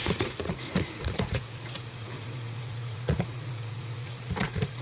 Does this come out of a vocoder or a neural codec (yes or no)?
yes